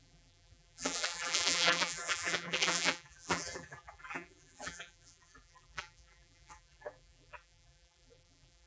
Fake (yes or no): yes